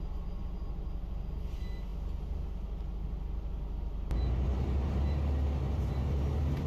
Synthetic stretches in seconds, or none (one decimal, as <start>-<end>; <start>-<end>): none